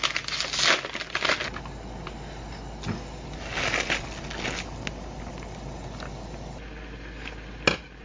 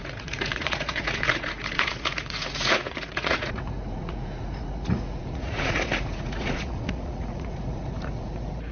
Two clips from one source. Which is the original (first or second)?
first